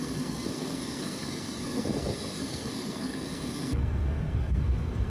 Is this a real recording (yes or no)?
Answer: no